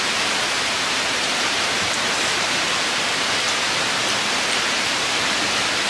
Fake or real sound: real